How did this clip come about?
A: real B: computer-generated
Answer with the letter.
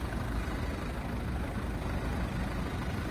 A